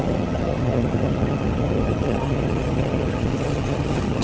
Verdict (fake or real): fake